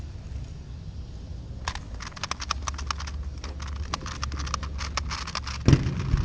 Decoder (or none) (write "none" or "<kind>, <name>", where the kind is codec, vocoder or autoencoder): none